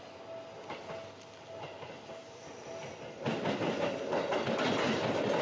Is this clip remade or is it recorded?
recorded